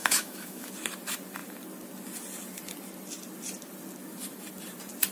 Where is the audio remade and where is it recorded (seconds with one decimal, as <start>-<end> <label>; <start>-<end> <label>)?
0.0-0.7 remade; 0.7-5.1 recorded